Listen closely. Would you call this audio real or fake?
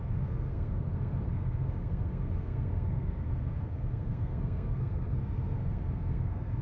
fake